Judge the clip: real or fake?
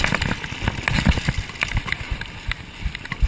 real